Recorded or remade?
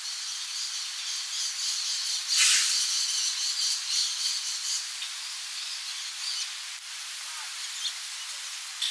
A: recorded